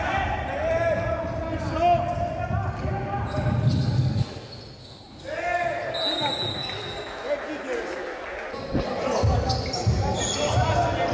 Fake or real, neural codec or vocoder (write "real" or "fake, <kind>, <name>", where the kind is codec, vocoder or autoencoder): real